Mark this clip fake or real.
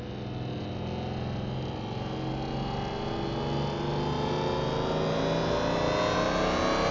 real